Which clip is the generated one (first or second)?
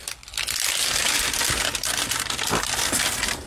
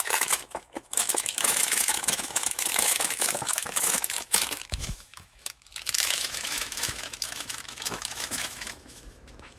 second